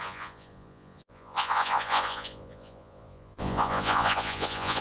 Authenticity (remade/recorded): remade